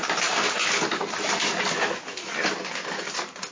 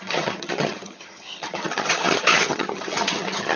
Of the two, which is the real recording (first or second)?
first